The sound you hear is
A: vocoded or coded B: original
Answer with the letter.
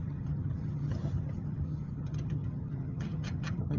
A